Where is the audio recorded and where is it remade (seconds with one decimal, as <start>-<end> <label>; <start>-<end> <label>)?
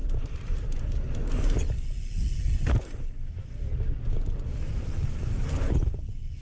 0.0-6.4 recorded